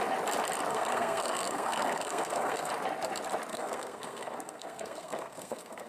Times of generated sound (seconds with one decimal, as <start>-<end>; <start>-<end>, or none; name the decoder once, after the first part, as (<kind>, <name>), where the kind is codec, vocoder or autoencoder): 0.7-2.7 (codec, SNAC); 3.5-5.9